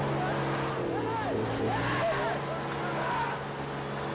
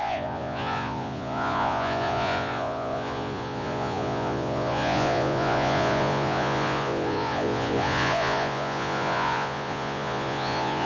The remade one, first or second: second